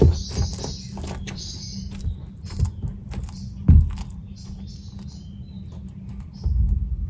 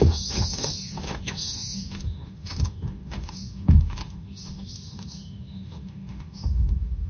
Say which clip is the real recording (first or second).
first